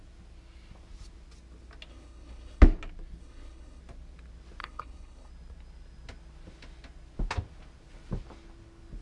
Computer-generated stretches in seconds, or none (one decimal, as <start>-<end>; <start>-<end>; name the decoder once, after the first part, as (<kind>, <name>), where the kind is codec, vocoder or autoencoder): 1.9-2.6 (codec, HILCodec); 3.2-3.8; 4.6-5.3